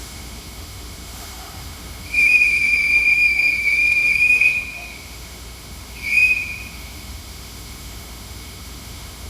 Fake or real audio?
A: fake